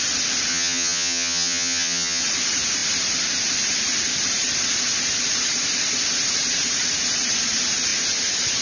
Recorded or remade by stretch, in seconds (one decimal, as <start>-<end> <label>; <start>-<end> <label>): 0.0-0.5 recorded; 0.5-2.2 remade; 2.2-8.6 recorded

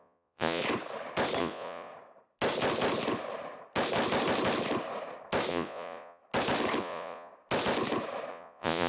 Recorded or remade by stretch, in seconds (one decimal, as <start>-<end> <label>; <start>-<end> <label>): 0.0-0.6 remade; 0.6-1.4 recorded; 1.4-1.9 remade; 1.9-5.5 recorded; 5.5-6.2 remade; 6.2-6.8 recorded; 6.8-7.3 remade; 7.3-8.3 recorded; 8.3-8.9 remade

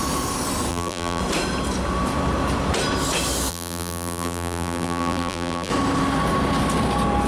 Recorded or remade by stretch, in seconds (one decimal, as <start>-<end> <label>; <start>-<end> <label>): 0.0-0.7 recorded; 0.7-1.2 remade; 1.2-3.5 recorded; 3.5-5.7 remade; 5.7-7.3 recorded

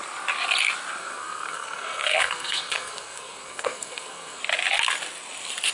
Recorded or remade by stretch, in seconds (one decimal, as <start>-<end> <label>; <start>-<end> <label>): 0.0-1.0 recorded; 1.0-4.4 remade; 4.4-5.7 recorded

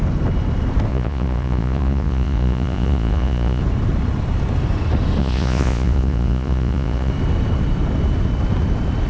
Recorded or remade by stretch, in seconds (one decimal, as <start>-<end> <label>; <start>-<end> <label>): 0.0-0.9 recorded; 0.9-3.6 remade; 3.6-5.2 recorded; 5.2-7.1 remade; 7.1-9.1 recorded

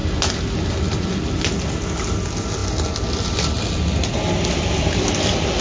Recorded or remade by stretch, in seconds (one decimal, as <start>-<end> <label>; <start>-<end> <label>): 0.0-5.6 recorded